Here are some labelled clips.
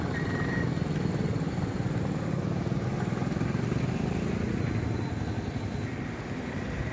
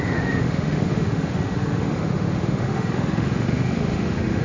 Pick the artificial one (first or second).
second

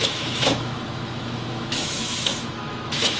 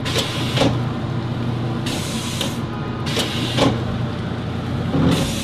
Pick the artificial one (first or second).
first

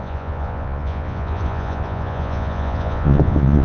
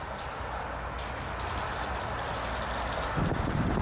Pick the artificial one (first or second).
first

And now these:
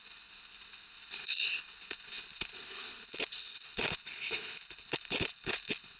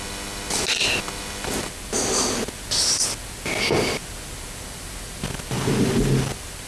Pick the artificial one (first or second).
first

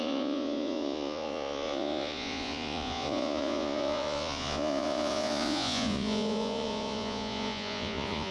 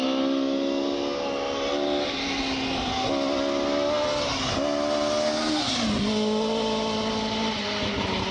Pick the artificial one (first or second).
first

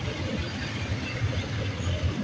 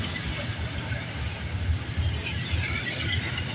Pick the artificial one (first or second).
first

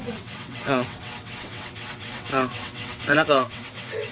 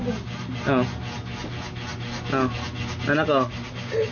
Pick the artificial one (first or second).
first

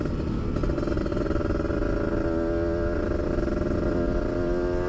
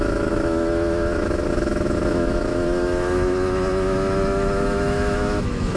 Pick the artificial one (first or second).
second